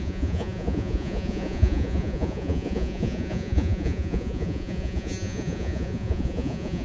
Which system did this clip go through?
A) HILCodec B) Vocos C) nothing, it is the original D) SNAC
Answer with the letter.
B